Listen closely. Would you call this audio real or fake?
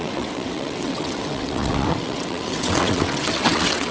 fake